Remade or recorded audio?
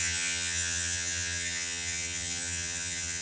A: remade